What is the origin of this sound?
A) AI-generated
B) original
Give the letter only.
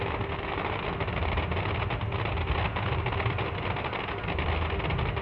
B